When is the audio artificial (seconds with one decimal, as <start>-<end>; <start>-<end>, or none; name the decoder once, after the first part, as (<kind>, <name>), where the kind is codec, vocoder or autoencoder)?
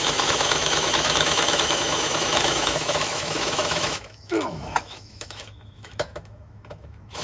0.0-7.2 (autoencoder, DAC-VAE)